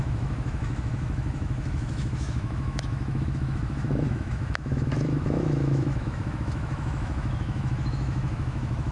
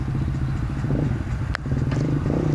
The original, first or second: second